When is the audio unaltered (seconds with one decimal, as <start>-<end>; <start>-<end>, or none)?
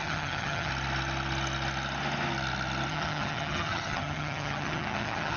0.7-2.9